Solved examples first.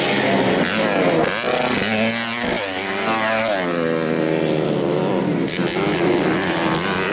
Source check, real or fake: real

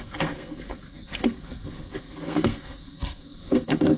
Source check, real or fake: fake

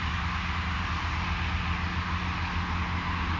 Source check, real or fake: real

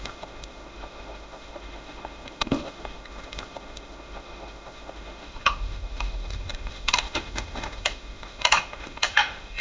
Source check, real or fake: fake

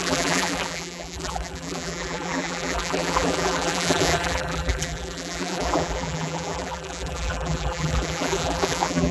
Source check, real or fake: fake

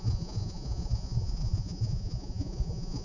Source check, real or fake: fake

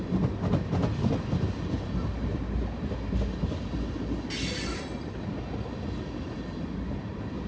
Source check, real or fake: real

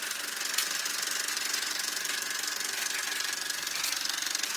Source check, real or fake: real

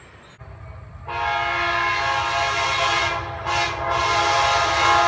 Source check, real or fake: real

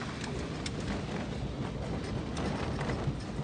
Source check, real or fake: real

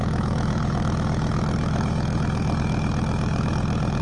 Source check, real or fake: fake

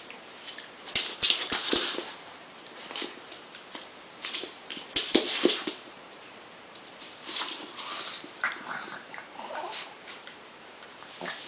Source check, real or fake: fake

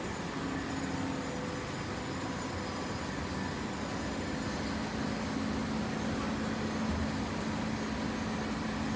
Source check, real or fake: real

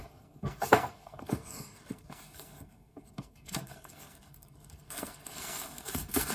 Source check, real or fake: fake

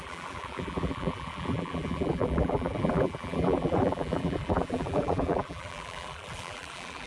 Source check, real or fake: fake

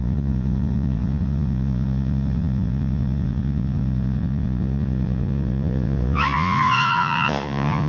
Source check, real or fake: fake